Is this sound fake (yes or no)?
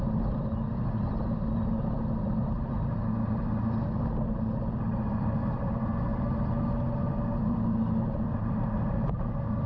no